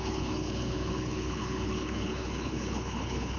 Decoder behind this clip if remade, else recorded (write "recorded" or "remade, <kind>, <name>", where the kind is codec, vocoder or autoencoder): remade, codec, HILCodec